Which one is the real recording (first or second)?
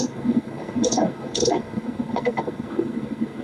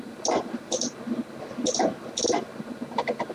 second